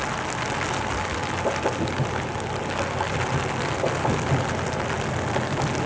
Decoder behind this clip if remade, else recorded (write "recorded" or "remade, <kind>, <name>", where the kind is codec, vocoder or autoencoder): recorded